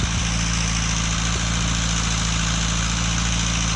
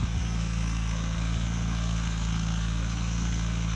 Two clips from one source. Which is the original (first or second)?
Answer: first